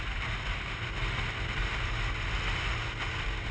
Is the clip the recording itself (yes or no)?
yes